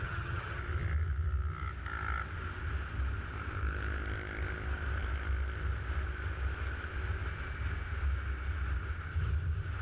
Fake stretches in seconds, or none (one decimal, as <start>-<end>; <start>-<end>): 0.0-0.6